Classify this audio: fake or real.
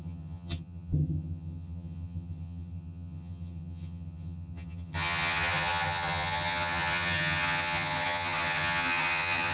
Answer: fake